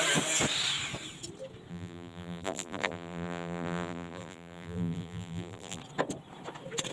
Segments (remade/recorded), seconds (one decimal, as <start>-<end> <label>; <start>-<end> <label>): 0.0-1.7 recorded; 1.7-5.8 remade; 5.8-6.9 recorded